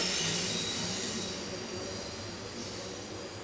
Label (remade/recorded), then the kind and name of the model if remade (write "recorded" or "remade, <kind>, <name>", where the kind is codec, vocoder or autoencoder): recorded